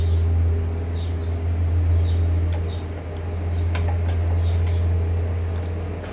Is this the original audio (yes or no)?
yes